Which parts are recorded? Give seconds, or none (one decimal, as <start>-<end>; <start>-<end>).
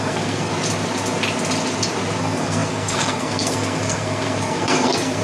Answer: 0.5-2.2